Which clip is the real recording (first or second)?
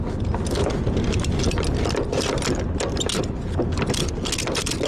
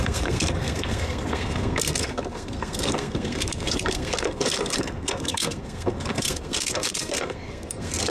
first